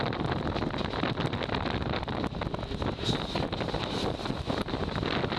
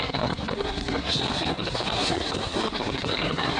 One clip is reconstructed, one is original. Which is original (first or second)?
first